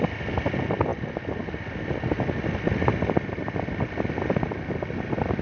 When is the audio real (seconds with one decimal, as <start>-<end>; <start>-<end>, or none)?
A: 0.0-5.4